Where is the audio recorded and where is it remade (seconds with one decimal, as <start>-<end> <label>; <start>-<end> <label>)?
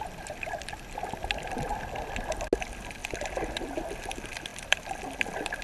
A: 0.0-1.7 remade; 1.7-3.0 recorded; 3.0-4.0 remade; 4.0-4.5 recorded; 4.5-5.0 remade; 5.0-5.6 recorded